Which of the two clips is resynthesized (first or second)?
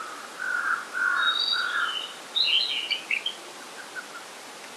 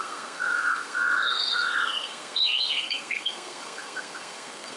second